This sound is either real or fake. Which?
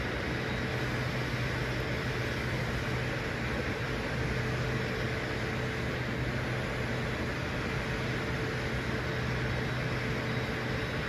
real